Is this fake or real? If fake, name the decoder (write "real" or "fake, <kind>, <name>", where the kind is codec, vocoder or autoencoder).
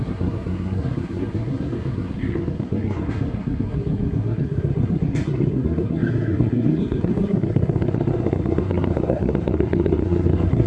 fake, codec, SNAC